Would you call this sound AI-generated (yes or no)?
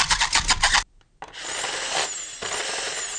no